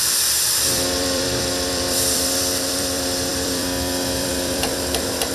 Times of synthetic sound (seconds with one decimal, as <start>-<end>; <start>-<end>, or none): 0.0-5.3